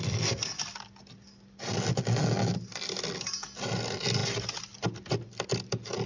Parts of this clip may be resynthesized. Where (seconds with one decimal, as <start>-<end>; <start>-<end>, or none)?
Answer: none